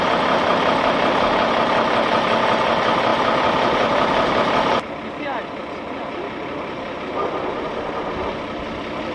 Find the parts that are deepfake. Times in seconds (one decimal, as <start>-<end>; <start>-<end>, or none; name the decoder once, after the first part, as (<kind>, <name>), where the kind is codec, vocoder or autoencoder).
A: none